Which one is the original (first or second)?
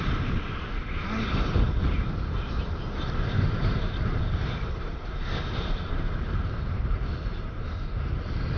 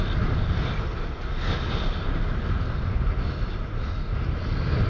second